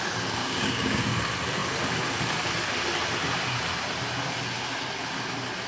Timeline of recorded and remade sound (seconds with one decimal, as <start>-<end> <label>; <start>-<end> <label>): 0.0-0.4 recorded; 0.4-1.0 remade; 1.0-5.7 recorded